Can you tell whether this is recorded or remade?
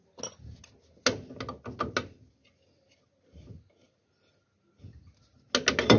recorded